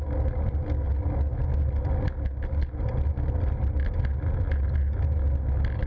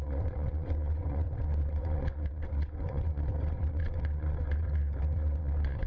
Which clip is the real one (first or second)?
first